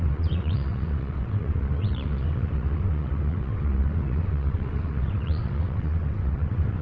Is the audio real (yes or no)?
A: no